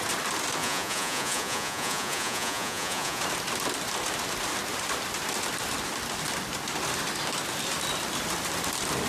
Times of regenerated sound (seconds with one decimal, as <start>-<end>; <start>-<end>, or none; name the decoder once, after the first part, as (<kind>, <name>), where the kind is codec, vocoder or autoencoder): 0.6-3.2 (vocoder, Vocos)